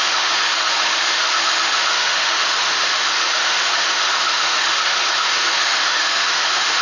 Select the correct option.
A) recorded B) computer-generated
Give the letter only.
B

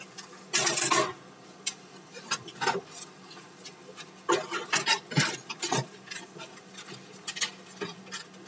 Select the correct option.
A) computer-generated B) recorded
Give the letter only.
B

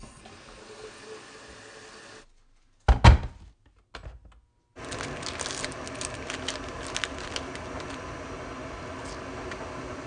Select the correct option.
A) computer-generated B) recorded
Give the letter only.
B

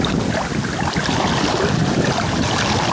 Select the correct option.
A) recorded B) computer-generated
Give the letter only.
A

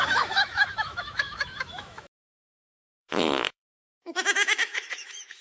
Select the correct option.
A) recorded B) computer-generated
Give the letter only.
B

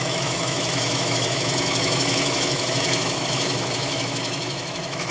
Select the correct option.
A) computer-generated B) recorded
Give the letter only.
A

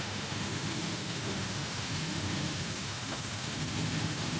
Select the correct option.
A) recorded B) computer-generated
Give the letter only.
B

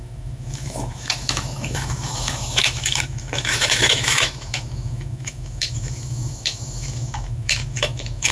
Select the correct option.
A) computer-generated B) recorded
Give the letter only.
A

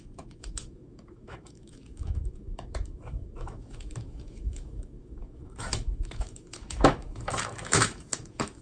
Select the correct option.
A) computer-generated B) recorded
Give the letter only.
A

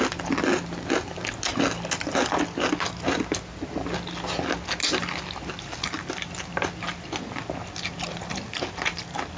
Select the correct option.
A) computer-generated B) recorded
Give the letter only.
B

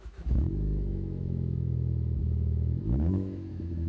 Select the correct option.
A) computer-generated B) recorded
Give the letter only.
A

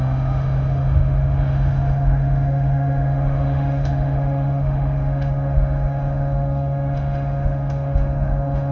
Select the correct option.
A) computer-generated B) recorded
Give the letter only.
A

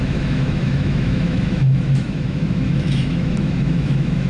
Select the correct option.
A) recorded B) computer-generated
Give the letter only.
B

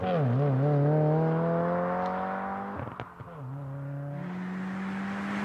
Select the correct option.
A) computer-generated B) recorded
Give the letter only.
B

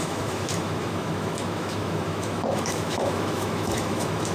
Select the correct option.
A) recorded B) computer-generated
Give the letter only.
B